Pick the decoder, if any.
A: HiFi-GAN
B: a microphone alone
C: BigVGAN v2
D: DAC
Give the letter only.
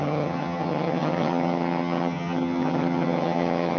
A